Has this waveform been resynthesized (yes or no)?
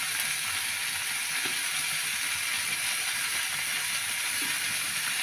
no